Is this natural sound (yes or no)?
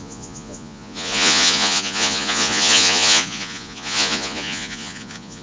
no